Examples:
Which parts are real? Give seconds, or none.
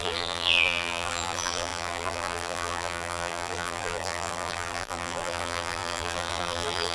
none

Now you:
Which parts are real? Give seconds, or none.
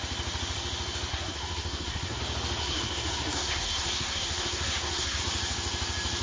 0.0-1.1; 2.2-2.6; 5.2-6.2